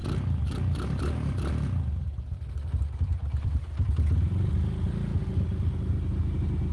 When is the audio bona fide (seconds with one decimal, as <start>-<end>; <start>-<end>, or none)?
0.0-3.2; 4.1-6.7